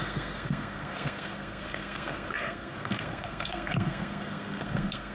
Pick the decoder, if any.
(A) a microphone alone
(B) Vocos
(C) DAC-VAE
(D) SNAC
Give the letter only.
D